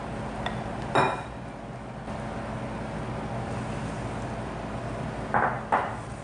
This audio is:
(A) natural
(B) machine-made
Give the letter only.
A